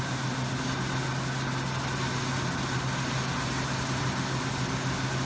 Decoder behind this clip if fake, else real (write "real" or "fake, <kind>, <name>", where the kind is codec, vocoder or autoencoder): real